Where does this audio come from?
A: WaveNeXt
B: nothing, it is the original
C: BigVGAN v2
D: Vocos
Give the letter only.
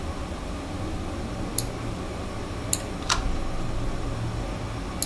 B